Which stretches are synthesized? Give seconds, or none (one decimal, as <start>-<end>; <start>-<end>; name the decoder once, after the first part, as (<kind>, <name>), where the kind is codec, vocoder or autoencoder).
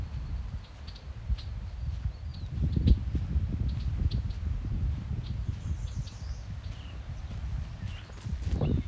none